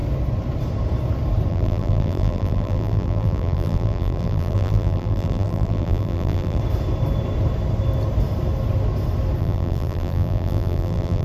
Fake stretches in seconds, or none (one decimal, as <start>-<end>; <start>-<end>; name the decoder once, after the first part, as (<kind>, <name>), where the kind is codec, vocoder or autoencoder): 1.5-6.6 (vocoder, BigVGAN v2); 9.4-11.2